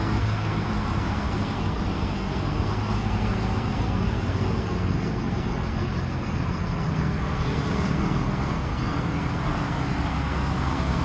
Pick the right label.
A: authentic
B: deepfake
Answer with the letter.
B